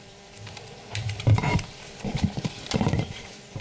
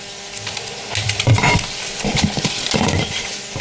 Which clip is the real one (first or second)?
second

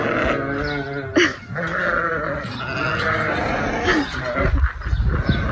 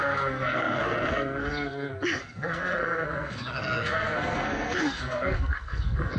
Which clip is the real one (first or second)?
first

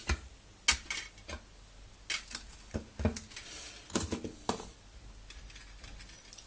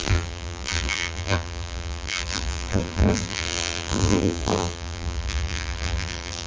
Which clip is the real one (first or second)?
first